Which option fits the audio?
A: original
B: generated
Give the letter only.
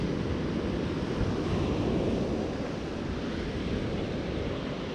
A